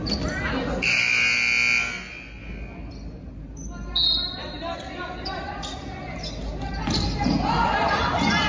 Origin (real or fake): real